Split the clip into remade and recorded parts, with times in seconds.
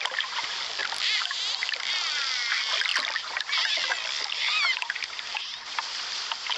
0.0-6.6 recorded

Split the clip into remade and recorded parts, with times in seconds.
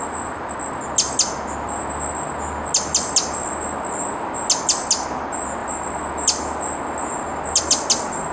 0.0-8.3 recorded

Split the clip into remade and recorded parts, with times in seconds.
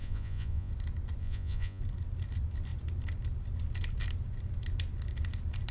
0.0-0.7 remade; 0.7-1.2 recorded; 1.2-1.8 remade; 1.8-5.7 recorded